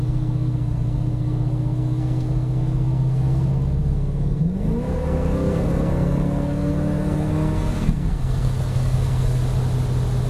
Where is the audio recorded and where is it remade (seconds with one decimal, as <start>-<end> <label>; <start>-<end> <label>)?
0.0-9.4 remade; 9.4-10.3 recorded